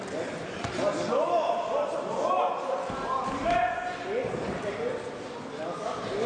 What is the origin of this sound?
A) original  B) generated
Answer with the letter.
A